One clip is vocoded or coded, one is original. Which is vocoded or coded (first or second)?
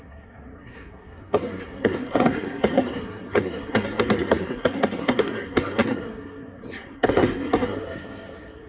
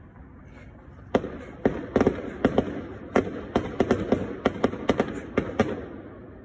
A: first